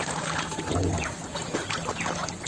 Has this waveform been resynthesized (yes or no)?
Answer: no